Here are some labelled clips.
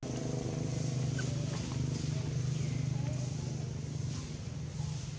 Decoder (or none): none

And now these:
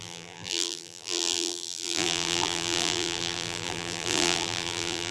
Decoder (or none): vocoder, BigVGAN v2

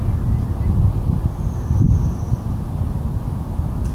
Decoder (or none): none